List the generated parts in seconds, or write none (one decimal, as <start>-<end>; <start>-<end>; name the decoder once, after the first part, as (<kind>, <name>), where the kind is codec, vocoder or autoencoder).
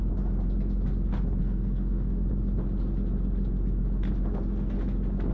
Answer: 1.4-2.3 (codec, SNAC)